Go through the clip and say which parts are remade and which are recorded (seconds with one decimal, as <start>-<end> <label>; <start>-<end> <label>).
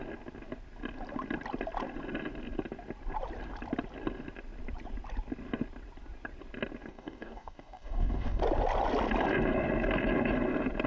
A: 0.0-6.9 recorded; 6.9-8.4 remade; 8.4-10.9 recorded